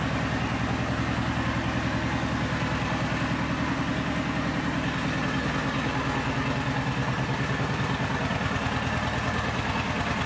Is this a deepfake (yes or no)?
no